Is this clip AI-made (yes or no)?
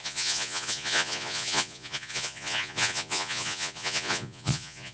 yes